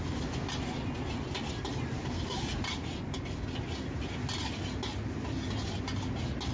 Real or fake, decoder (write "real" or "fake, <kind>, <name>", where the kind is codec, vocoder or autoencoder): real